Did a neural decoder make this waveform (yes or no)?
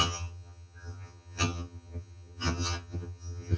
yes